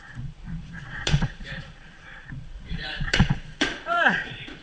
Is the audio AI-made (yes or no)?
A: yes